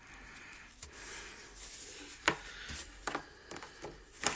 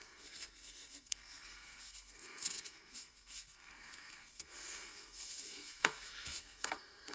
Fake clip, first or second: second